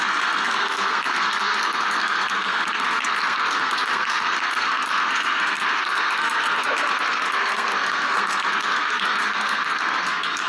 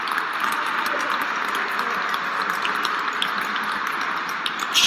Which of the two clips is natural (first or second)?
second